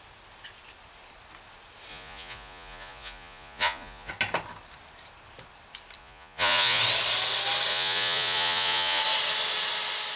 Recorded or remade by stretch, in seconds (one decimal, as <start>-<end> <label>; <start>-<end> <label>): 0.0-1.9 recorded; 1.9-4.1 remade; 4.1-6.0 recorded; 6.0-6.8 remade; 6.8-7.7 recorded; 7.7-9.0 remade; 9.0-10.2 recorded